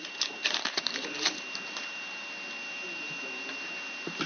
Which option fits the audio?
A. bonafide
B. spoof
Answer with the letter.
B